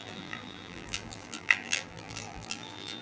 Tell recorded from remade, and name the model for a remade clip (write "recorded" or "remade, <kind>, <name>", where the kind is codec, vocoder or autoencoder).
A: remade, vocoder, BigVGAN v2